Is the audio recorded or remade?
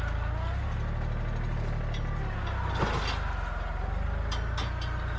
recorded